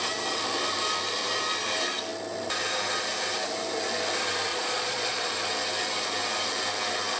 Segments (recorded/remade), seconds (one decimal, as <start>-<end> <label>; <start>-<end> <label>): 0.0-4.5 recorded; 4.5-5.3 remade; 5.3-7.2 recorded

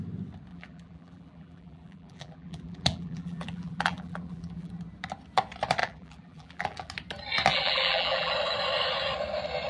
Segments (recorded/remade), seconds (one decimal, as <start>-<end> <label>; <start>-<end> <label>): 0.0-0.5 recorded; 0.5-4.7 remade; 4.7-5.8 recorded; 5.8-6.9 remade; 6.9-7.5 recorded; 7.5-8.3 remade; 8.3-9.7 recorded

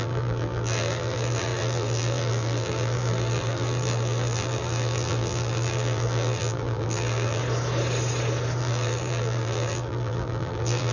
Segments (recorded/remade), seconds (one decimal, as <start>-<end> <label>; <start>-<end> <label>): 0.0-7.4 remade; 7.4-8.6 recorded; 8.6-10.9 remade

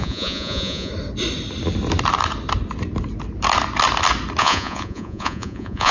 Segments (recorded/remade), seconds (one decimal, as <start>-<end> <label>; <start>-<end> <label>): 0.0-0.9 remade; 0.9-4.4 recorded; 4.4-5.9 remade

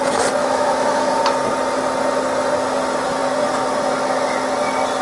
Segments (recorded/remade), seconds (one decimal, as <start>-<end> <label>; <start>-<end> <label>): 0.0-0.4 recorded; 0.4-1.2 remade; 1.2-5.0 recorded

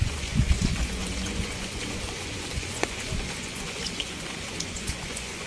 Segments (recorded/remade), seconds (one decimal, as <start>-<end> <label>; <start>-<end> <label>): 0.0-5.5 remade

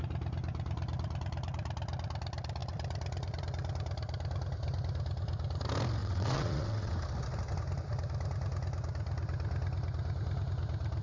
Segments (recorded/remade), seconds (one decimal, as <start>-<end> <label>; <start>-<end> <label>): 0.0-6.0 recorded; 6.0-6.9 remade; 6.9-11.0 recorded

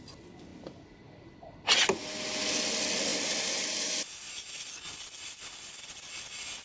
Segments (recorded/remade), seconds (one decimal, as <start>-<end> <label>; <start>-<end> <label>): 0.0-6.6 recorded